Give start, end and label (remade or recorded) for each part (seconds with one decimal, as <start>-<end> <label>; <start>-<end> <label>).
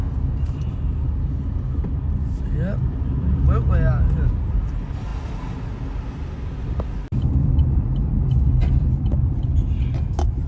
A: 0.0-10.5 recorded